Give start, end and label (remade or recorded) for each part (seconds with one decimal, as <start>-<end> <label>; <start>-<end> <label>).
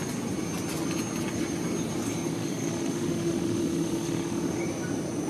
0.0-2.3 recorded; 2.3-4.6 remade; 4.6-5.3 recorded